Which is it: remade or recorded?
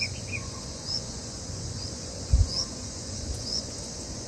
remade